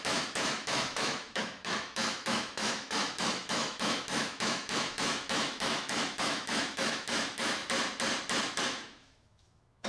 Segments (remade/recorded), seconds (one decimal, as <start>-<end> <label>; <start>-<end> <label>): 0.0-7.6 remade; 7.6-8.6 recorded; 8.6-9.9 remade

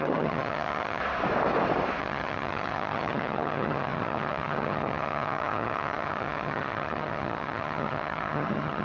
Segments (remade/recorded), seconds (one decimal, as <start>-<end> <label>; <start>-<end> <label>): 0.0-1.0 remade; 1.0-2.0 recorded; 2.0-8.8 remade

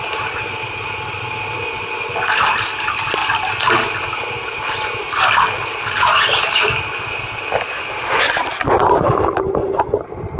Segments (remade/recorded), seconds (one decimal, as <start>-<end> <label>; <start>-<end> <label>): 0.0-10.4 recorded

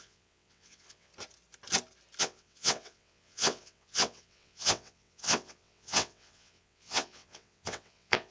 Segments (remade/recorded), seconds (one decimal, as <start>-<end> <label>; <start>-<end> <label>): 0.0-1.1 remade; 1.1-2.2 recorded; 2.2-8.3 remade

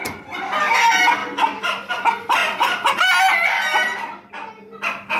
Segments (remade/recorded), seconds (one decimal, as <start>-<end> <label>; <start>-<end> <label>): 0.0-5.2 recorded

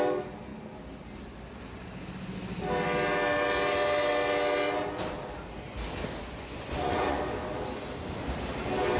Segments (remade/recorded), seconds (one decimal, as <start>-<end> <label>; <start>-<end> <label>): 0.0-6.2 recorded; 6.2-7.2 remade; 7.2-9.0 recorded

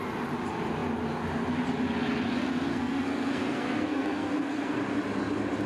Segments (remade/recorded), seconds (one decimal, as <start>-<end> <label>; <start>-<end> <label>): 0.0-2.7 recorded; 2.7-4.8 remade; 4.8-5.7 recorded